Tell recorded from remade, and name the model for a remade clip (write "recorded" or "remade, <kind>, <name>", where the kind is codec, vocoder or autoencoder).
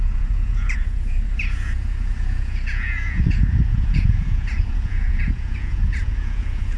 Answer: remade, vocoder, Vocos